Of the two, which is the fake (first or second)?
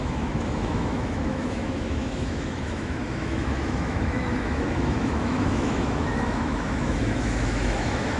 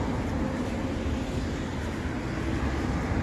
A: first